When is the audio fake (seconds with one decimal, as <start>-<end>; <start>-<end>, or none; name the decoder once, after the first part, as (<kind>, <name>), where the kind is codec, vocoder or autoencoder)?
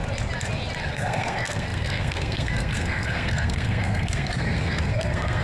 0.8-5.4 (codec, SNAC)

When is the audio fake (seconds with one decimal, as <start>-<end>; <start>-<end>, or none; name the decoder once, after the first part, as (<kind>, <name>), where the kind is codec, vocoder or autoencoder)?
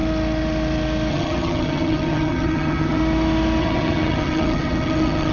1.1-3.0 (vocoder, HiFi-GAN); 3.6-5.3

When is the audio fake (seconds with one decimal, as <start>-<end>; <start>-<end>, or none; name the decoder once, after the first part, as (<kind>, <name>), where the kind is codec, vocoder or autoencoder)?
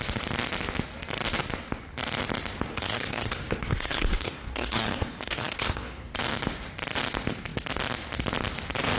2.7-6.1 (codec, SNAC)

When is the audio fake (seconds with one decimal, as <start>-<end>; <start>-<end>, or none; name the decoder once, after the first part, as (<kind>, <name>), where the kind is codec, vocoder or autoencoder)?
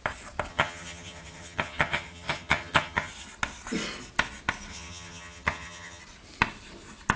0.5-3.1 (vocoder, HiFi-GAN); 4.7-6.0